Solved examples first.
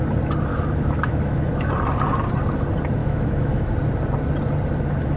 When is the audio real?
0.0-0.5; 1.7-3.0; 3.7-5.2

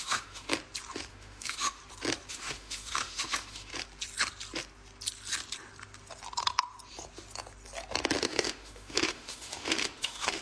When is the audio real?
0.5-1.1; 1.8-2.3; 3.7-8.2

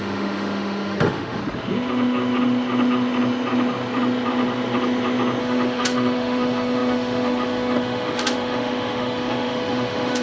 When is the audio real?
1.4-5.4

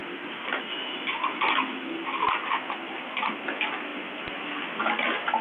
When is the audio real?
0.0-5.4

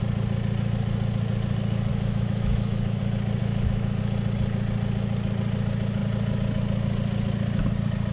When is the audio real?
0.0-1.9; 3.0-3.4; 4.0-8.1